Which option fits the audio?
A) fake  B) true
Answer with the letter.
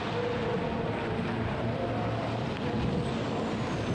B